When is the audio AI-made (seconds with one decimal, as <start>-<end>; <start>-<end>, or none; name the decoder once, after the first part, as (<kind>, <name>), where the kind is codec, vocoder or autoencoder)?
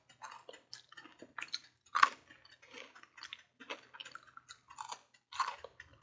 none